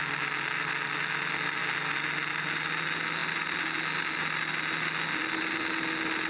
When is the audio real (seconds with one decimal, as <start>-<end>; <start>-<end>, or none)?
0.0-6.3